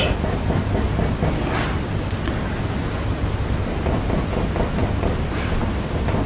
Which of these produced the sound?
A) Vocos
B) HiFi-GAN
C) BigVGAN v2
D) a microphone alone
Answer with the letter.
D